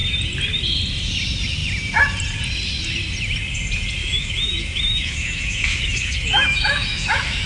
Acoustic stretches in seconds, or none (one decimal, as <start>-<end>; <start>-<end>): 0.0-4.0